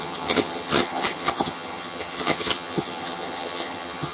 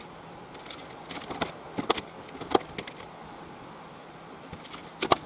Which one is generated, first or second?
first